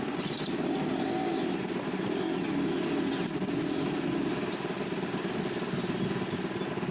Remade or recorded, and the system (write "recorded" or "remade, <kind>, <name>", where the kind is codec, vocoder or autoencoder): recorded